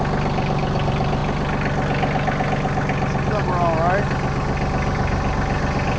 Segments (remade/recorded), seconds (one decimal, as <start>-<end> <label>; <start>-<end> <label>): 0.0-6.0 recorded